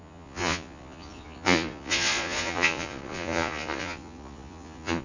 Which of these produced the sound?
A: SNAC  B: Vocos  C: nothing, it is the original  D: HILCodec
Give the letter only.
B